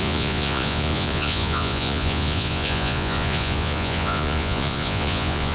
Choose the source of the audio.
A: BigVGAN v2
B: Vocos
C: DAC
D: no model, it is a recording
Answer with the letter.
B